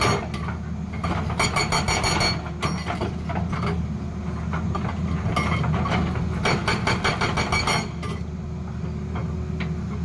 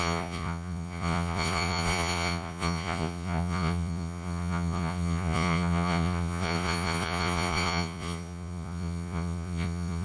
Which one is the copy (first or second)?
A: second